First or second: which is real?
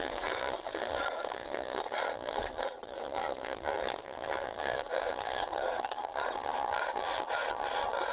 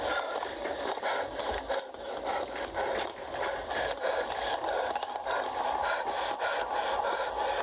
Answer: second